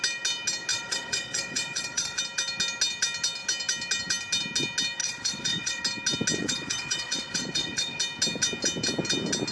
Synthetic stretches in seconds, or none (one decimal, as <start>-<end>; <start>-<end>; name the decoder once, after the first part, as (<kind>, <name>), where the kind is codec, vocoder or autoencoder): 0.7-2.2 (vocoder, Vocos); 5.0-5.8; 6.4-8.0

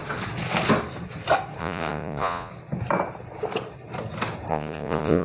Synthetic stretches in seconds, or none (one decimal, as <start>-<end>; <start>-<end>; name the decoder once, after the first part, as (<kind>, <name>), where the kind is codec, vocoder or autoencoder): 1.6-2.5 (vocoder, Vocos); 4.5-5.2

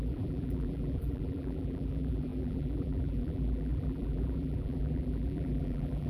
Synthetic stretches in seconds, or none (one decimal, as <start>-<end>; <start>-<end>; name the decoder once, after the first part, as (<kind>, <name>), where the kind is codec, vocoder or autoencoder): 0.0-6.1 (vocoder, BigVGAN v2)